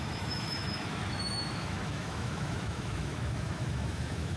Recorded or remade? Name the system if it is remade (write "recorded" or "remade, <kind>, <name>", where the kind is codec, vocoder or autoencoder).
remade, autoencoder, DAC-VAE